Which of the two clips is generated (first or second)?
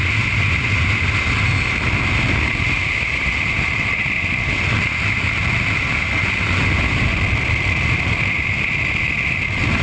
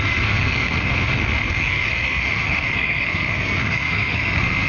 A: second